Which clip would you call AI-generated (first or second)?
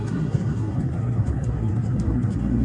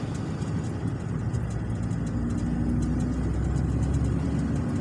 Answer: first